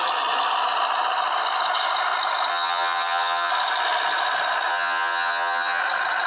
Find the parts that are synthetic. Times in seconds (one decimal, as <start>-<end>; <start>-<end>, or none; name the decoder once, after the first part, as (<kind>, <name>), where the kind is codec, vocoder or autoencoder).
2.5-3.5 (vocoder, HiFi-GAN); 4.7-5.8